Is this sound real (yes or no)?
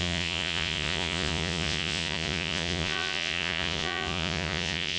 no